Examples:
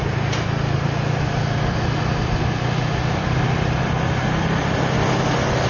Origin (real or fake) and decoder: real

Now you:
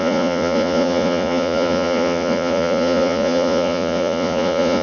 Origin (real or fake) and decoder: fake, vocoder, Vocos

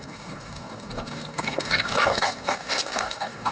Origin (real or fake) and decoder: fake, codec, DAC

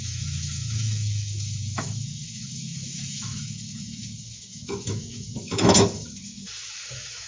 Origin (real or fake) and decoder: fake, autoencoder, DAC-VAE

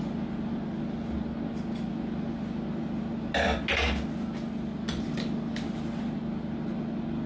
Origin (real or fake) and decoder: real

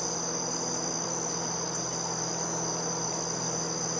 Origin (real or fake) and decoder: real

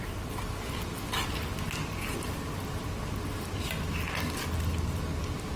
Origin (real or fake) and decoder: real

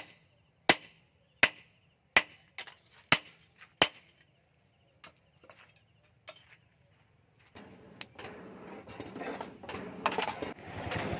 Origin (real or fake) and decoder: real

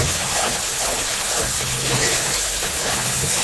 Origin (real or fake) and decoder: fake, codec, HILCodec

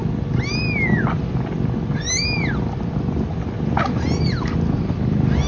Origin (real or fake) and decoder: real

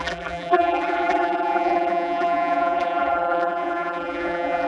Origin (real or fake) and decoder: fake, vocoder, BigVGAN v2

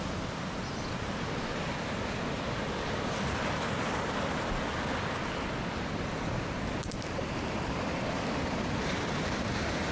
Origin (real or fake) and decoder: real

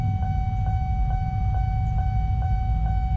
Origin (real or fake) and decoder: real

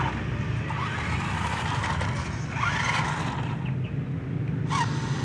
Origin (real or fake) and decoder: real